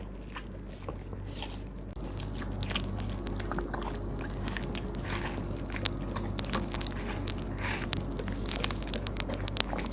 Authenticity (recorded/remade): recorded